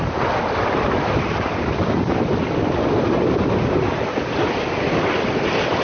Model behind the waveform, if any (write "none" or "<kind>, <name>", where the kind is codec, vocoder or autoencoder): none